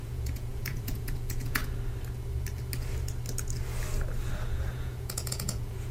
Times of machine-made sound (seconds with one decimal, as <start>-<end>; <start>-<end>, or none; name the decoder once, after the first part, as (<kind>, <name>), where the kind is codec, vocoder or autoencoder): 0.0-1.6 (vocoder, Vocos); 4.5-5.9